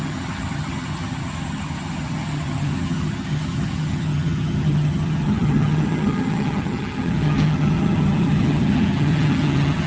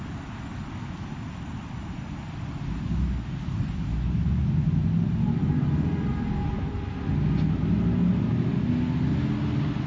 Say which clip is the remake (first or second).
first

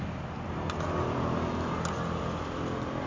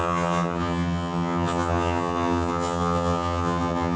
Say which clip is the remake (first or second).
second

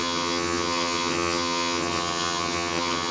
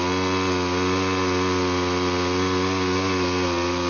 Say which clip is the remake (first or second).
first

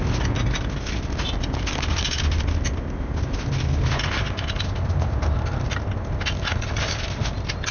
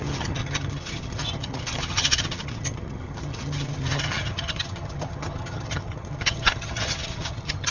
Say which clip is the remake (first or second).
second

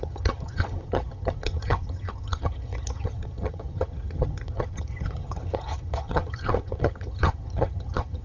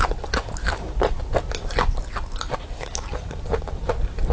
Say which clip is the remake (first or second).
first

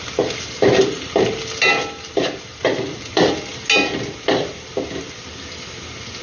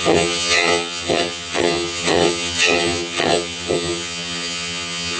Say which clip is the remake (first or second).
second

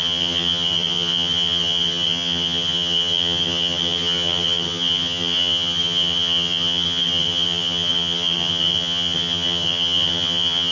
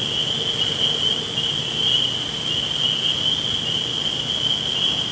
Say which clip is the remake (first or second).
first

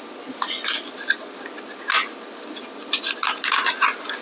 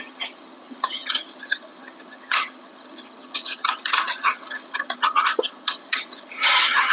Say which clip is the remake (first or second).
second